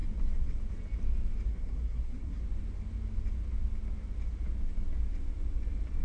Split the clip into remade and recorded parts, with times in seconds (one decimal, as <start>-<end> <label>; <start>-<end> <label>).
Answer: 0.0-1.5 recorded; 1.5-2.4 remade; 2.4-6.0 recorded